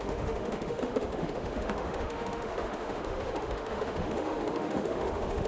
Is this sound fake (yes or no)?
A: yes